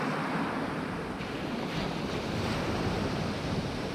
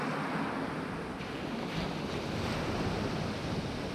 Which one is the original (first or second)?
second